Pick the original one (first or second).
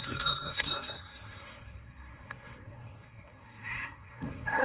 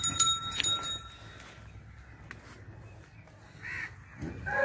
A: second